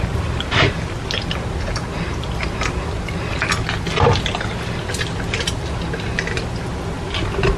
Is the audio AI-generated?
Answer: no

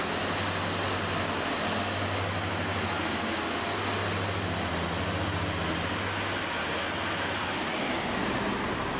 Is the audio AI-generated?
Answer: no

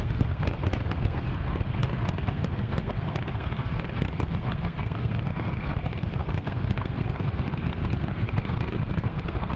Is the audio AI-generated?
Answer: yes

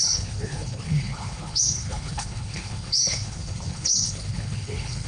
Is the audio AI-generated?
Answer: yes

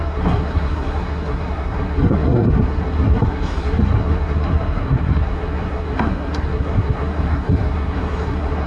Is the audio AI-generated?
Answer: yes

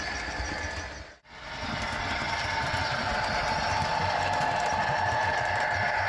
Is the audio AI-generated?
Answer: no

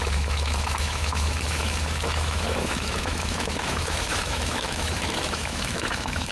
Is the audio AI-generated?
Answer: yes